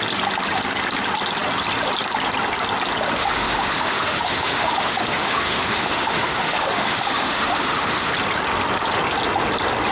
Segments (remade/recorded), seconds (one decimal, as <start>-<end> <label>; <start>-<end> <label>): 0.0-3.2 recorded; 3.2-8.1 remade; 8.1-9.9 recorded